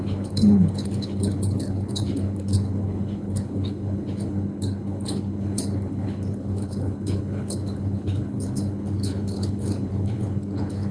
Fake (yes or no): yes